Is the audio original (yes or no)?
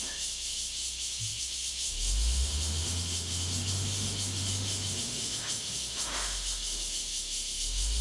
no